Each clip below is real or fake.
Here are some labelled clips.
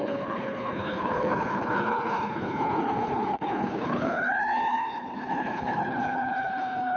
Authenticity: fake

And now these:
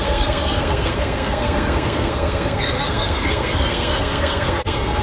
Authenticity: fake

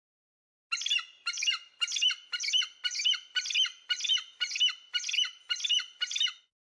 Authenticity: real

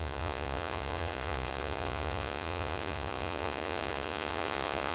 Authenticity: fake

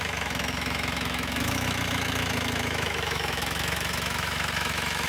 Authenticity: fake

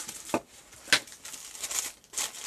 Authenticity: real